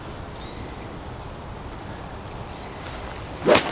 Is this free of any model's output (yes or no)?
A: yes